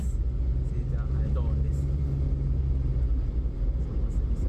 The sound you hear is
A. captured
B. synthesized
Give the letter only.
A